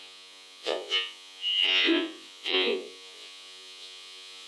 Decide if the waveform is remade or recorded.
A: remade